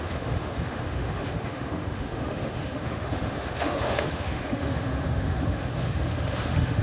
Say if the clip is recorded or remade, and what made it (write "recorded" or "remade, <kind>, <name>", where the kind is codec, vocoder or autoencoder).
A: remade, autoencoder, DAC-VAE